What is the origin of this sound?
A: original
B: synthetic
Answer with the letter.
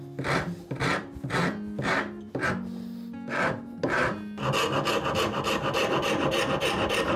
A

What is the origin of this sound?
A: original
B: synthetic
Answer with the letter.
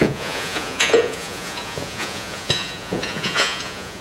B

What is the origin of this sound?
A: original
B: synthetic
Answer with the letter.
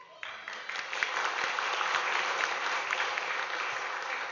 A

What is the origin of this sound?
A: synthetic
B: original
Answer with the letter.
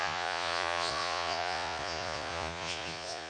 A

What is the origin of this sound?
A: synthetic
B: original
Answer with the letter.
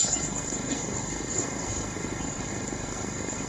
A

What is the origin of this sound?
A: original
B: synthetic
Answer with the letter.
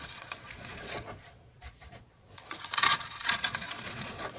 B